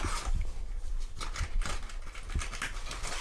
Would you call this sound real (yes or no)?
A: yes